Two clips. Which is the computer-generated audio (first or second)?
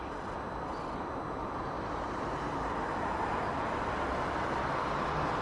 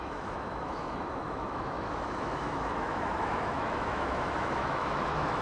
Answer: second